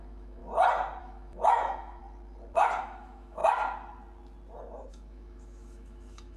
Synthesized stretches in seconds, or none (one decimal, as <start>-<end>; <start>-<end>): 0.0-0.4; 1.0-2.0; 2.8-3.4; 4.9-6.4